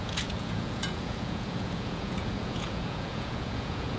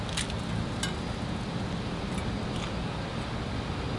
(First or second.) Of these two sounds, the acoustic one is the second